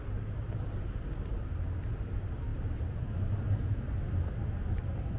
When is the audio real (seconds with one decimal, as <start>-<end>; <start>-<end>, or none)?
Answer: 0.0-5.2